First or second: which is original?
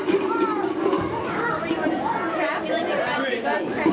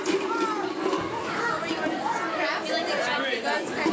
second